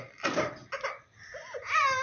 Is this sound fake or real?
real